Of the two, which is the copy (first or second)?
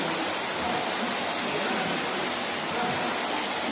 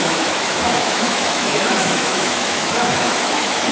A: second